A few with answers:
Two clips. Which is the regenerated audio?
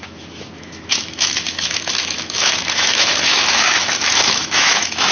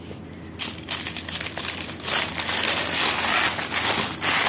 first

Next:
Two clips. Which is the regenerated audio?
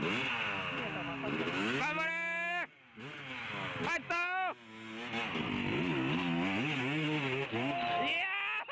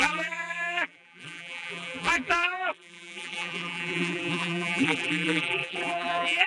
second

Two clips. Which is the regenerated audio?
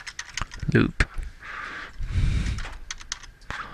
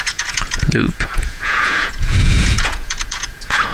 second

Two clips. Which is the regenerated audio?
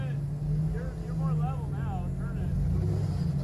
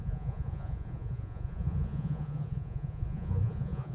second